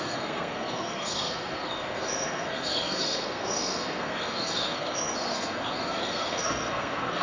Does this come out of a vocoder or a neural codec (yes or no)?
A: yes